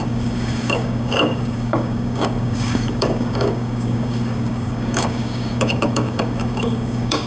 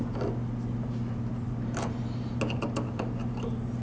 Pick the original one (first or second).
second